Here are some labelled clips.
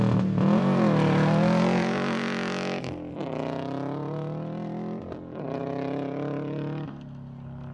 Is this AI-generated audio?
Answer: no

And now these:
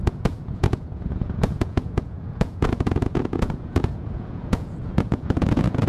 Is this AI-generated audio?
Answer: yes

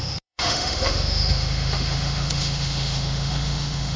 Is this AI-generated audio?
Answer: yes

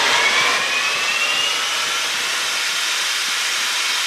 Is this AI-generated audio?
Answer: no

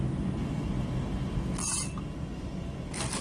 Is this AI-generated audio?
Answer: no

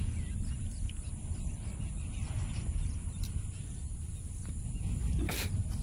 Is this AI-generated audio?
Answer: no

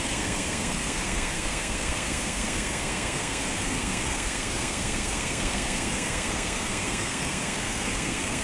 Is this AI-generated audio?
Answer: yes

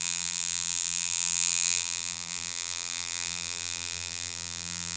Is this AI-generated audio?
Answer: yes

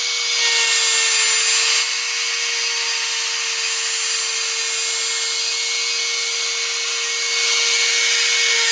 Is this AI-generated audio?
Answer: no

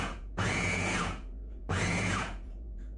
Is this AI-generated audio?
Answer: yes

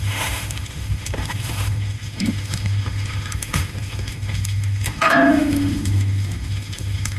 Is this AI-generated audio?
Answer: yes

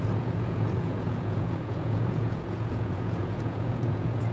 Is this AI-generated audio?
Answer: yes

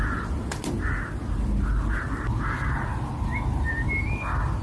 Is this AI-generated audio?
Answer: no